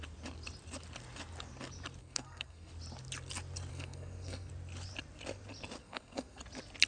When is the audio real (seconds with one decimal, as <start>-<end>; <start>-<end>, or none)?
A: 0.0-2.0; 2.7-3.7; 4.5-5.8; 6.4-6.9